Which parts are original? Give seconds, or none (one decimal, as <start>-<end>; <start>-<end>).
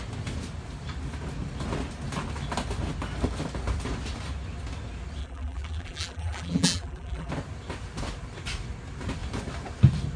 0.0-5.2; 7.3-10.2